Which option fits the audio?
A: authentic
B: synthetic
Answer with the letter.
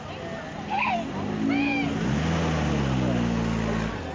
A